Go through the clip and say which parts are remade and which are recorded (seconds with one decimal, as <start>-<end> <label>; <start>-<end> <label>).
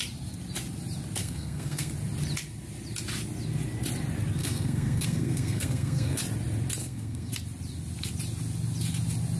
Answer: 0.0-1.2 recorded; 1.2-1.9 remade; 1.9-4.4 recorded; 4.4-6.2 remade; 6.2-6.8 recorded; 6.8-7.3 remade; 7.3-9.4 recorded